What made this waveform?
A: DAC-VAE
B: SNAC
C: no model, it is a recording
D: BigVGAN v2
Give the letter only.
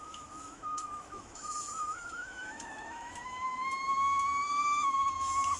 A